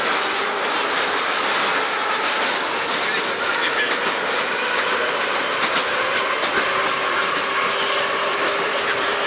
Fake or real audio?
real